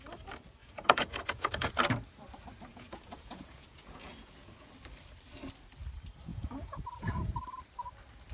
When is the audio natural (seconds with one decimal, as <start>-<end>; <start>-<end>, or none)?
0.0-0.6; 1.7-2.7; 4.7-6.3; 7.4-8.3